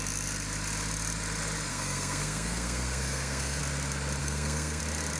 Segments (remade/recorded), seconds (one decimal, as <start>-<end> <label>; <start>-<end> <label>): 0.0-1.7 recorded; 1.7-3.6 remade; 3.6-4.2 recorded; 4.2-4.8 remade; 4.8-5.2 recorded